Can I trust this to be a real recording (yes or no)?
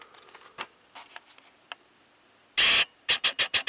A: yes